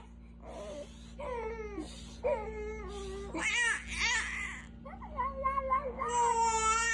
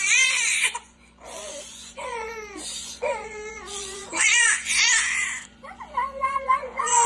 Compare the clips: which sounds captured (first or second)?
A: first